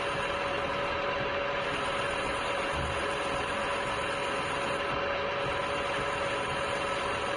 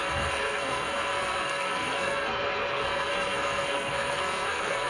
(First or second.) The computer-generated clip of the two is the second